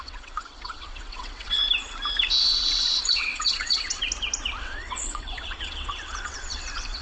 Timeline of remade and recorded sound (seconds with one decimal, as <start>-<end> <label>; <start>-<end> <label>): 0.0-1.6 remade; 1.6-2.4 recorded; 2.4-4.0 remade; 4.0-4.6 recorded; 4.6-7.0 remade